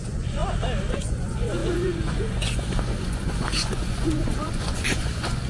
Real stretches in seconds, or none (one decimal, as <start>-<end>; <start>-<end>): 0.4-0.9